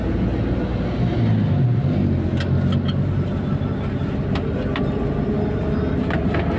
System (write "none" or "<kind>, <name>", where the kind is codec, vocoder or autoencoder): none